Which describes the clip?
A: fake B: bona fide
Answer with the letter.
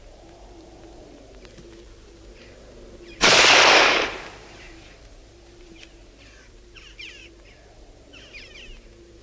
A